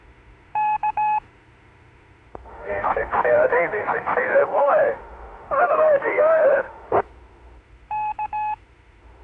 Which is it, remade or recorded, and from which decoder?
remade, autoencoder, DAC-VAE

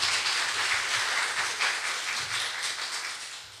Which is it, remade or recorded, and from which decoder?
recorded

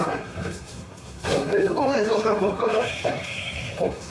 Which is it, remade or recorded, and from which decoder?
remade, codec, SNAC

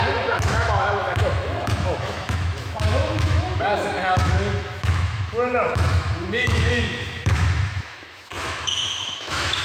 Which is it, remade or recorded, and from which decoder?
remade, autoencoder, DAC-VAE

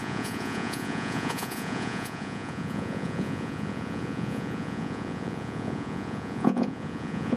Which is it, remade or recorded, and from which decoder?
remade, vocoder, Vocos